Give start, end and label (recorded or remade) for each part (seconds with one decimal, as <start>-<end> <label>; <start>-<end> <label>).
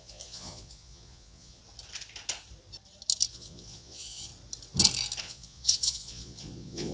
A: 0.0-1.6 remade; 1.6-3.3 recorded; 3.3-4.3 remade; 4.3-5.2 recorded; 5.2-6.9 remade